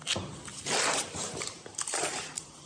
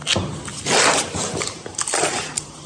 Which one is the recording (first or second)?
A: second